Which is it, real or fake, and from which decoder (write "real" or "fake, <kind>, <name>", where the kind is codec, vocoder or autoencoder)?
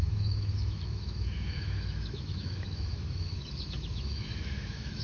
fake, autoencoder, DAC-VAE